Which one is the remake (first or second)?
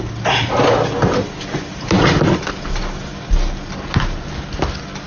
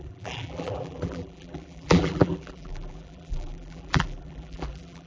second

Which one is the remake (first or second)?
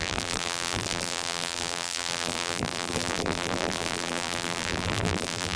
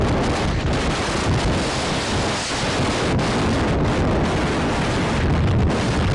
first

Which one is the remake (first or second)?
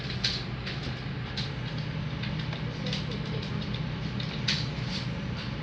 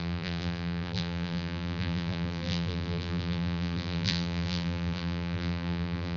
second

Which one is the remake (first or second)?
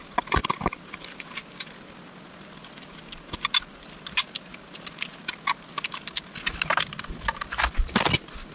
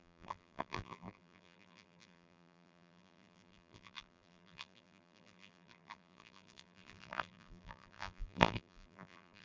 second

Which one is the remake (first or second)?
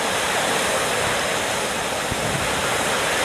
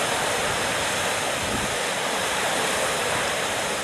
second